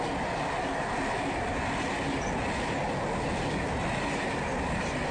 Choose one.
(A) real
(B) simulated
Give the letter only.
A